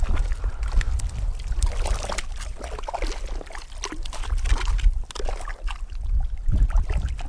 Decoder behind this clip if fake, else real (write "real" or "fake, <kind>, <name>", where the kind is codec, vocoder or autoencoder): real